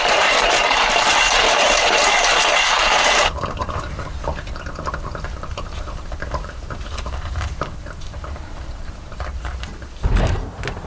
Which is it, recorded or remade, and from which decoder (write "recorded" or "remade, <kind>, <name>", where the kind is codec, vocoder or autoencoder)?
remade, vocoder, BigVGAN v2